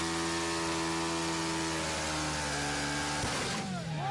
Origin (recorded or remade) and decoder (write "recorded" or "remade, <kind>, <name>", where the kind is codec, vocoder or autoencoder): recorded